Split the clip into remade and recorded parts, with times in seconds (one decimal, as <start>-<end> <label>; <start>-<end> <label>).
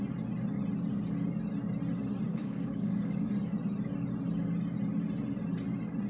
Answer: 0.0-2.3 recorded; 2.3-3.3 remade; 3.3-6.1 recorded